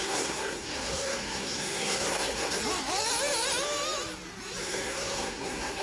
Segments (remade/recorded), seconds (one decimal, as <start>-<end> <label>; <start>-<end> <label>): 0.0-2.6 remade; 2.6-4.6 recorded; 4.6-5.8 remade